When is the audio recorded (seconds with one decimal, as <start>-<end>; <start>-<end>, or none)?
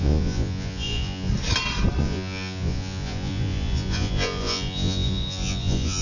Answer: 1.3-2.0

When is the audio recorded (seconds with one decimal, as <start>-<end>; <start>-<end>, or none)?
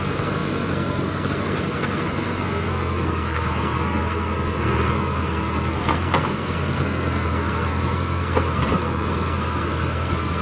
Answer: none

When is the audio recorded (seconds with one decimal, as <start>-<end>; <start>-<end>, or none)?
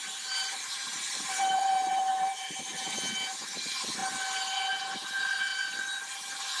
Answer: 2.7-3.6; 4.0-4.7; 5.5-6.6